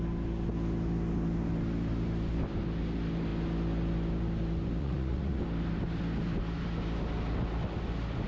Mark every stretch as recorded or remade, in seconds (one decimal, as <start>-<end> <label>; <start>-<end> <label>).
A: 0.0-4.8 recorded; 4.8-5.4 remade; 5.4-8.3 recorded